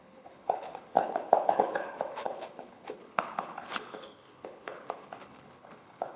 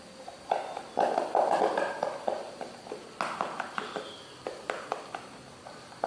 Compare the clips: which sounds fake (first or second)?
first